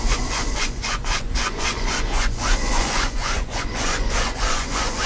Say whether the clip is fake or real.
fake